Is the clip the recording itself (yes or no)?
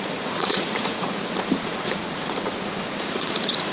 no